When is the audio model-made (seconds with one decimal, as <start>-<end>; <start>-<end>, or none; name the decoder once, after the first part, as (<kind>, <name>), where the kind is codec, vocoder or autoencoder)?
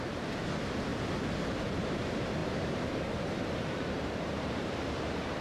0.0-0.9 (vocoder, BigVGAN v2); 1.5-5.4